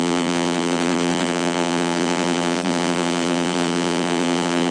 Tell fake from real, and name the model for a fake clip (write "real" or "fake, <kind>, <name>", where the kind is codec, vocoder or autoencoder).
fake, vocoder, BigVGAN v2